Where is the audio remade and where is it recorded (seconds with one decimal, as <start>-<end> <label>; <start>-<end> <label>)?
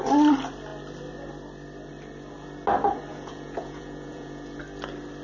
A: 0.0-3.1 recorded; 3.1-4.6 remade; 4.6-5.2 recorded